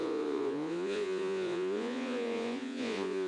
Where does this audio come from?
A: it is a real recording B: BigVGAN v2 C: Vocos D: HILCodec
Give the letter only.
C